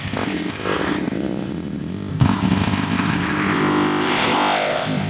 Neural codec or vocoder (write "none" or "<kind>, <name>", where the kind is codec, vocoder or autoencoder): codec, ZipCodec